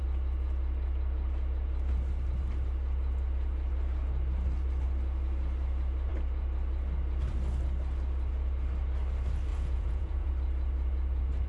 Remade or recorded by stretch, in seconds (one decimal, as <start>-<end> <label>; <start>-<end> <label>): 0.0-9.5 recorded; 9.5-10.3 remade; 10.3-11.5 recorded